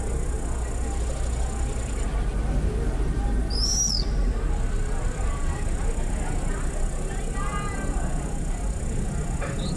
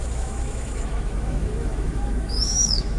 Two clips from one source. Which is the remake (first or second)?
second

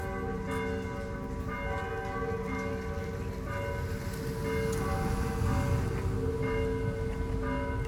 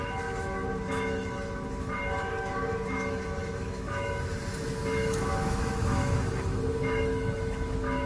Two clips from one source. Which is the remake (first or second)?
second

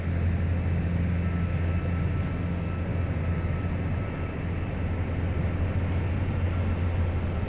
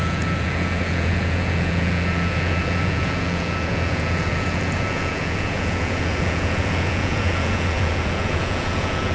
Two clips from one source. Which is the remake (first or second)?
second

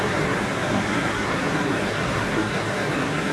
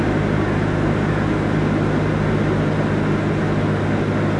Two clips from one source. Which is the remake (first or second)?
first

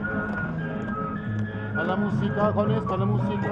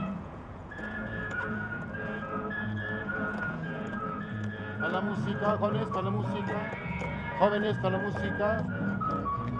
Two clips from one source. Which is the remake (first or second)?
second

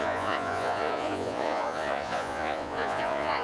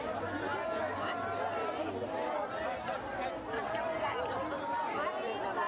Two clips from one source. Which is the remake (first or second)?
first